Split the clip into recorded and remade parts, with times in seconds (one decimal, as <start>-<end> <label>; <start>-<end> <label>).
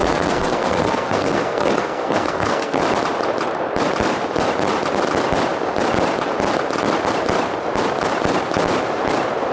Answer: 0.0-2.8 remade; 2.8-9.5 recorded